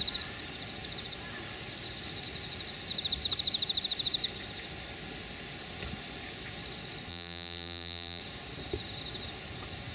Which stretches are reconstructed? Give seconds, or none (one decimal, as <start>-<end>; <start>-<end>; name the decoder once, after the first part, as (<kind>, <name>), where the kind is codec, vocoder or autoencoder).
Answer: 7.1-8.2 (vocoder, BigVGAN v2)